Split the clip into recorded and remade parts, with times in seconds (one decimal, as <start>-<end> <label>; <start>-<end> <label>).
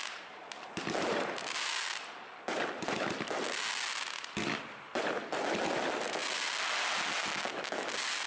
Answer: 0.0-8.3 recorded